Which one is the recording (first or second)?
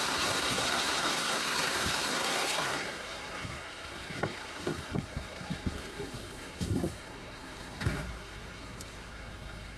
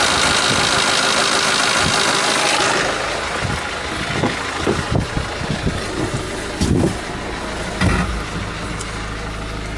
second